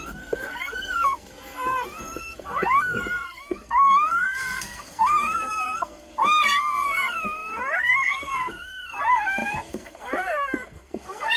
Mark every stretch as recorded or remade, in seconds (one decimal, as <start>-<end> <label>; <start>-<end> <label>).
0.0-11.4 remade